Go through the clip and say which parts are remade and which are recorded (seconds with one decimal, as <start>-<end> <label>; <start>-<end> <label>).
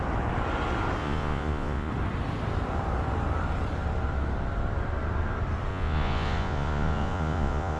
0.0-1.0 recorded; 1.0-1.9 remade; 1.9-5.7 recorded; 5.7-7.8 remade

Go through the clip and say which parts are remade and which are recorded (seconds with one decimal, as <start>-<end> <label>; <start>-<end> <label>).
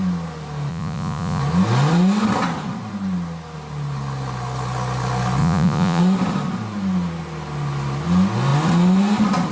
0.0-0.7 recorded; 0.7-1.4 remade; 1.4-5.4 recorded; 5.4-6.0 remade; 6.0-9.5 recorded